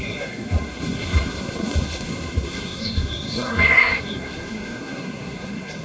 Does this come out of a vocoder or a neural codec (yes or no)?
yes